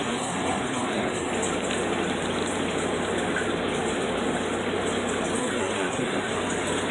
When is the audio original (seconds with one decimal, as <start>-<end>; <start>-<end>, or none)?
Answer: 1.3-5.4; 6.3-6.9

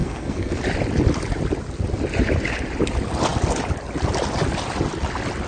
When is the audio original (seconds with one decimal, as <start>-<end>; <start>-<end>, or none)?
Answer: 0.6-5.5

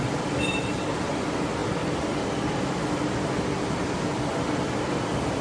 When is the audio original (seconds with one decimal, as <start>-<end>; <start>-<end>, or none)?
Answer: 0.0-5.4

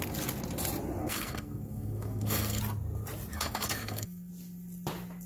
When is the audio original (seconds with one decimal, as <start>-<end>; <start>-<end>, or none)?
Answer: 0.0-1.0; 2.6-3.3; 4.3-5.3

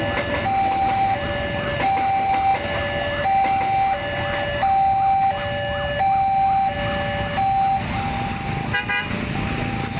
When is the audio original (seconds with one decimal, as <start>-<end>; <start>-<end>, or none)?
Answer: 0.0-10.0